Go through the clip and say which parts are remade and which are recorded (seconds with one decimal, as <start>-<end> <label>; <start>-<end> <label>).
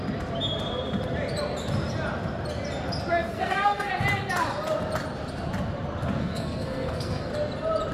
0.0-3.3 recorded; 3.3-3.9 remade; 3.9-6.2 recorded; 6.2-7.3 remade; 7.3-7.9 recorded